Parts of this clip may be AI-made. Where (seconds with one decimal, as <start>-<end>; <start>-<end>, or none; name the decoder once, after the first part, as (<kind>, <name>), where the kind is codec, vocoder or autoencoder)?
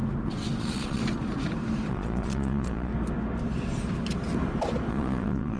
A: 0.6-1.0 (vocoder, Vocos); 1.9-2.9; 4.9-5.6